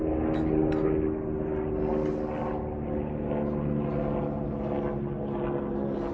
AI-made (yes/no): no